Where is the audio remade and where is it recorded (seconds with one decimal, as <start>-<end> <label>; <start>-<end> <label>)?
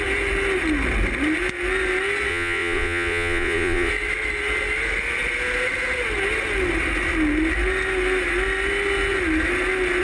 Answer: 0.0-2.3 recorded; 2.3-3.9 remade; 3.9-10.0 recorded